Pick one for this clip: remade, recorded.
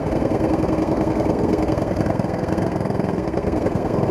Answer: remade